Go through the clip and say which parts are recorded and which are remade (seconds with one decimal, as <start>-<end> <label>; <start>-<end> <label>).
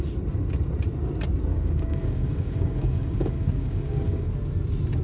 0.0-1.5 recorded; 1.5-4.3 remade; 4.3-5.0 recorded